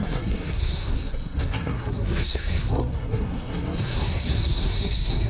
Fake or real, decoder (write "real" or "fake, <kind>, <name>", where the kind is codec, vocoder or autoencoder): fake, codec, SNAC